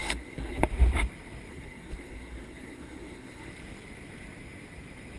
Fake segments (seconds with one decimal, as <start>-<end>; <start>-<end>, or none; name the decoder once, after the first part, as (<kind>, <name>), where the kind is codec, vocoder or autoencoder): 0.0-0.6 (codec, SNAC); 1.5-3.5

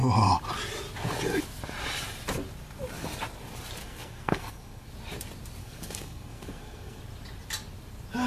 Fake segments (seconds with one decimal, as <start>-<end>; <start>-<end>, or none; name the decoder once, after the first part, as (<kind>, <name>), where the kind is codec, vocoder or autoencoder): 3.8-4.9 (codec, SNAC); 5.6-7.0